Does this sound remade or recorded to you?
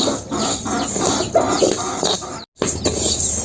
recorded